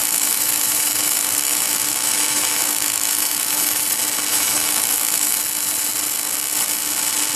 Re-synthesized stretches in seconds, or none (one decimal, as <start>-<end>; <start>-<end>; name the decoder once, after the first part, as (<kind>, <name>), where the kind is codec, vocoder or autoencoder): 0.0-3.8 (autoencoder, DAC-VAE); 4.3-5.4